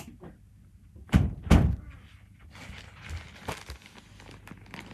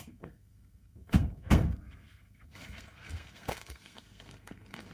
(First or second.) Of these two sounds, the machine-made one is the second